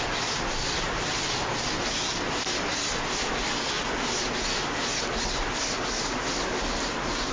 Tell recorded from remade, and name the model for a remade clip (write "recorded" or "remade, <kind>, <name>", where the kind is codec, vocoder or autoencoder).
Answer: recorded